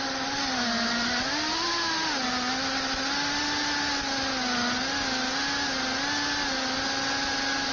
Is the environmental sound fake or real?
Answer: real